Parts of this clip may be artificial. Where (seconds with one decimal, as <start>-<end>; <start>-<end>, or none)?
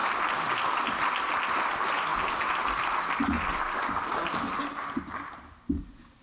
none